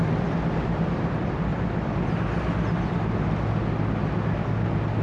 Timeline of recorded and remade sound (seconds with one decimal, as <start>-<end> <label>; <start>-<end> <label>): 0.0-5.0 recorded